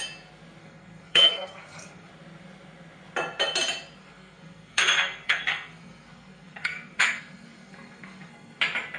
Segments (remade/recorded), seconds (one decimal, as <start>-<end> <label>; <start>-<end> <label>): 0.0-0.6 recorded; 0.6-2.1 remade; 2.1-4.0 recorded; 4.0-8.6 remade; 8.6-9.0 recorded